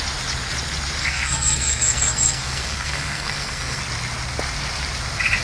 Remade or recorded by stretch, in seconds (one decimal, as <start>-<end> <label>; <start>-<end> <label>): 0.0-1.0 recorded; 1.0-3.8 remade; 3.8-5.4 recorded